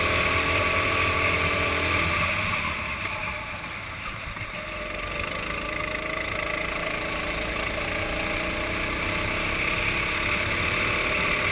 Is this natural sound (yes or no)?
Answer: yes